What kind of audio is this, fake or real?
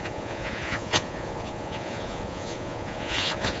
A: fake